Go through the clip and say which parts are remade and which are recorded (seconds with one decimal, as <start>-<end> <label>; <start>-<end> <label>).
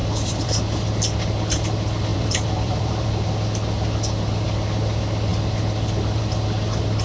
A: 0.0-0.6 remade; 0.6-2.1 recorded; 2.1-3.1 remade; 3.1-7.0 recorded